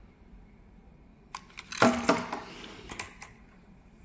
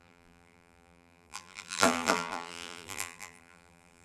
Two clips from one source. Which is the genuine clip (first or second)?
first